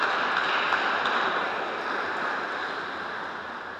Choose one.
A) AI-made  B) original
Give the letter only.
B